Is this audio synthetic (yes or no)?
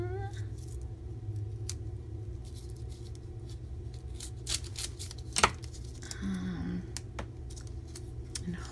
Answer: no